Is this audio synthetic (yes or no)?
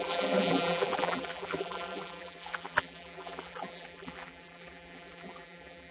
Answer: yes